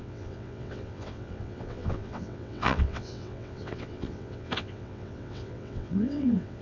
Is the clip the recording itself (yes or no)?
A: no